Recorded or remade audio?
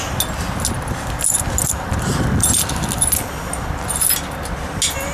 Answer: recorded